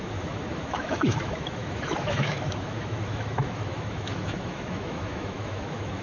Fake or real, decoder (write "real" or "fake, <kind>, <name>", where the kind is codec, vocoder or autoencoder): fake, autoencoder, DAC-VAE